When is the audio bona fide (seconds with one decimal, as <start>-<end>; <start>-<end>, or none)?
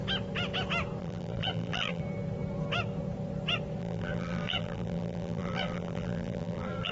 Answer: 0.0-1.0; 2.0-3.8